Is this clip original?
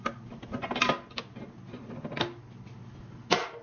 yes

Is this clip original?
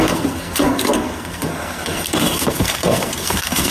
no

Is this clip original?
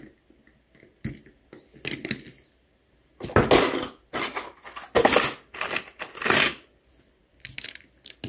yes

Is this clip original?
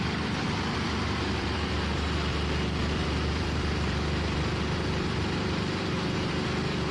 no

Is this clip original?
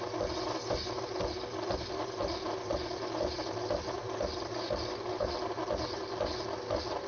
yes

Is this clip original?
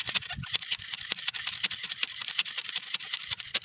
yes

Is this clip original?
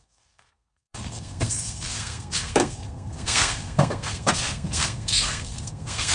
no